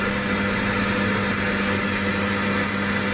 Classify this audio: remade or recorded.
recorded